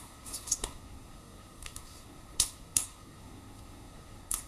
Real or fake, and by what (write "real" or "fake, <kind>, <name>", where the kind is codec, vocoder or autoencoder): fake, codec, SNAC